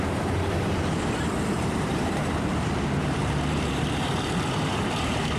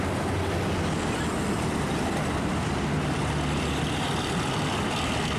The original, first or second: second